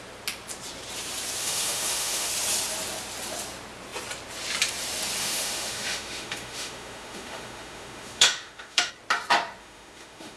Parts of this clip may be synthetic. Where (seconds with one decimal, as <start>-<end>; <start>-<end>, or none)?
1.4-2.3; 5.2-8.9; 9.6-10.4